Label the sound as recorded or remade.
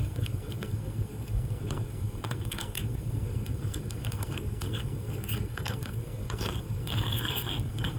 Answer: remade